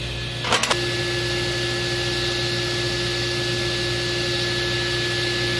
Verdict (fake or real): real